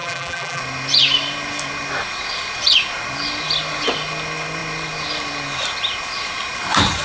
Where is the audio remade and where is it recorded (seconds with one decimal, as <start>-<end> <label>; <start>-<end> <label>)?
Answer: 0.0-0.6 remade; 0.6-7.0 recorded